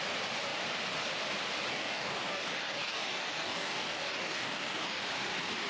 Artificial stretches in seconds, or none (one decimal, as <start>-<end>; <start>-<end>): 1.7-5.0